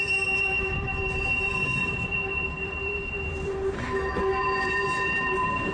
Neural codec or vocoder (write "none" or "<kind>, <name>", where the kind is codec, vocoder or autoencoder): vocoder, BigVGAN v2